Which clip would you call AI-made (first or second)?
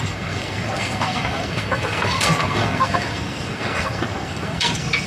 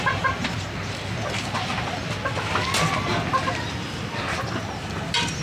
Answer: first